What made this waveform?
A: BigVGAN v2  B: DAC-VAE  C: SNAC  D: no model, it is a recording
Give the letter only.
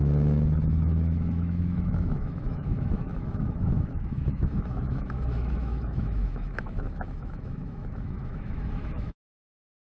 B